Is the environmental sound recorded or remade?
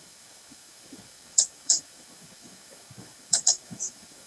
remade